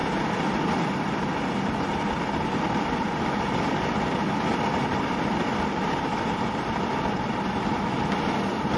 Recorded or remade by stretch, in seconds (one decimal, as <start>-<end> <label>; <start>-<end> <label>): 0.0-8.8 recorded